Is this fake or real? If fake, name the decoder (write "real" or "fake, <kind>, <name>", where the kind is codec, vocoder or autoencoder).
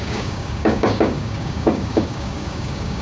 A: fake, codec, DAC